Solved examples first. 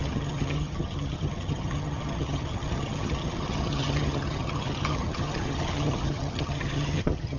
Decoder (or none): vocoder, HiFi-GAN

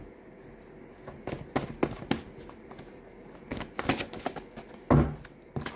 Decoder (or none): none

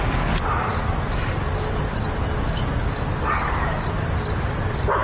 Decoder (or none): none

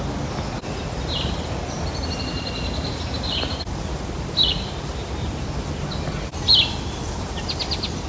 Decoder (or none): none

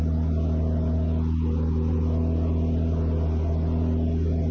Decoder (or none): none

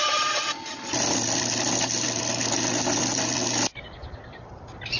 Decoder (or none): none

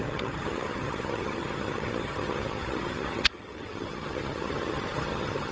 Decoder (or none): vocoder, HiFi-GAN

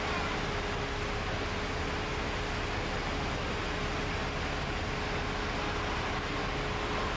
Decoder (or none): none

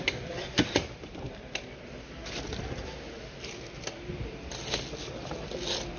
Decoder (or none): none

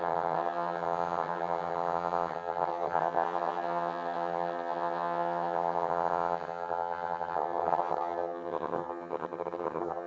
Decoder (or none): vocoder, HiFi-GAN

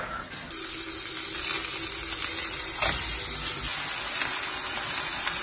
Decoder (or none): none